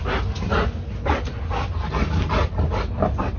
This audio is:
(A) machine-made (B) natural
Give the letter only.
B